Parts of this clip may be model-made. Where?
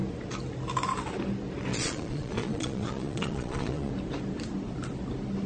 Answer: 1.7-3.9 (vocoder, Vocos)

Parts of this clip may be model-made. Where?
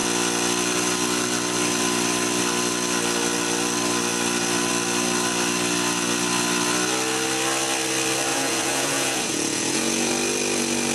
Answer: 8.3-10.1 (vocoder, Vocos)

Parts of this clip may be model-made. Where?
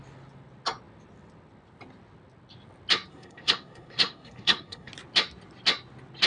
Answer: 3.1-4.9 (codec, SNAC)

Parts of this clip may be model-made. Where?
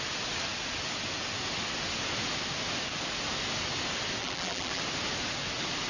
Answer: 4.2-4.8 (vocoder, BigVGAN v2)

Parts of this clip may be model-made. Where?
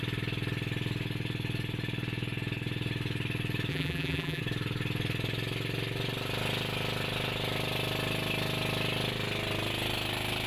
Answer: 3.7-4.4 (vocoder, BigVGAN v2)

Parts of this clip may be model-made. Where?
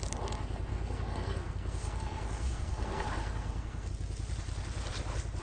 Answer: 0.7-3.9 (codec, SNAC)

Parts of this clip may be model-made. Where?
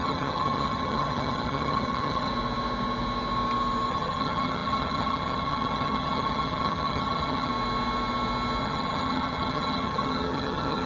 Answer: 0.0-2.3 (vocoder, HiFi-GAN); 3.9-7.5; 8.6-10.9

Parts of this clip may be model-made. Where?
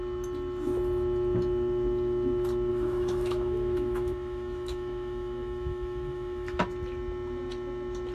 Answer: 2.7-6.6 (autoencoder, DAC-VAE)